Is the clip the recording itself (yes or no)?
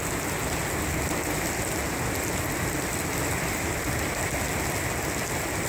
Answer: yes